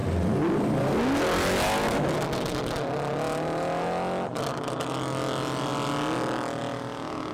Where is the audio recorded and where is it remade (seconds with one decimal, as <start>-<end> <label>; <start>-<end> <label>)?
0.0-7.3 recorded